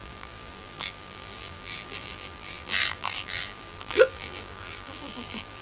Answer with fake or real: fake